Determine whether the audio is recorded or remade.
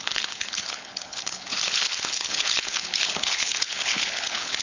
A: remade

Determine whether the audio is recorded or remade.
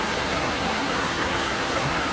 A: remade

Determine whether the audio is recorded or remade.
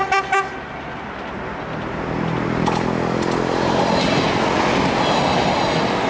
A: recorded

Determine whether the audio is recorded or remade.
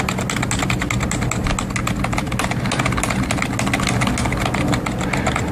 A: recorded